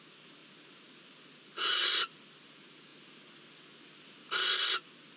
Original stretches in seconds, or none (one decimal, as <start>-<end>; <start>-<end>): 0.0-5.2